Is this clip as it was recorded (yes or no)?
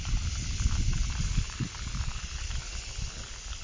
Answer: yes